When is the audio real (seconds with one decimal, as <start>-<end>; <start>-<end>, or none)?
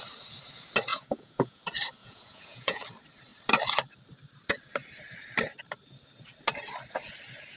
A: 0.0-0.9; 1.6-2.0; 2.8-7.6